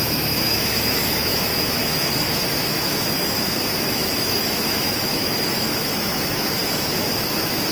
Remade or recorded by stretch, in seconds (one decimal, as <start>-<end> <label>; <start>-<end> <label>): 0.0-7.7 remade